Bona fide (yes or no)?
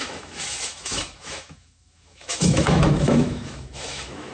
no